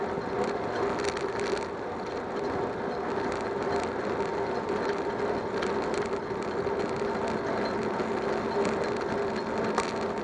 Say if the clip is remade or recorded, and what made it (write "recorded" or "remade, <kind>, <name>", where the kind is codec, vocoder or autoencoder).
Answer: recorded